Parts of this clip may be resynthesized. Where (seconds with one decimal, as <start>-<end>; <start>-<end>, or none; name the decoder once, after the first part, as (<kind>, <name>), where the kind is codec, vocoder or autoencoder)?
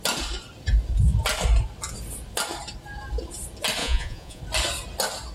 3.8-4.4 (vocoder, Vocos)